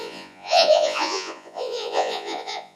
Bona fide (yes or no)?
no